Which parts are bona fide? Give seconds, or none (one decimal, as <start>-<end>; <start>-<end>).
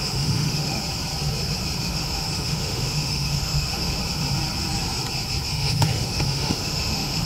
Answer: 0.8-1.8; 4.0-5.5